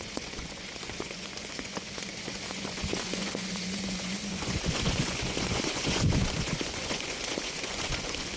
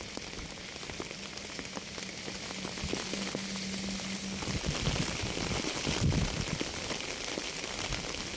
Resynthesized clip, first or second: first